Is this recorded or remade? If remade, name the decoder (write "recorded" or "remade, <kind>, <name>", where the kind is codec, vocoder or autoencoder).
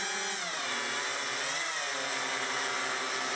recorded